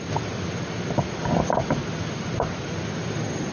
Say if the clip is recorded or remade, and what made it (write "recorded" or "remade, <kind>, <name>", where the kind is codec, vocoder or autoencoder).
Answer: recorded